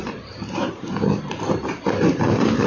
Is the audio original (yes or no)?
yes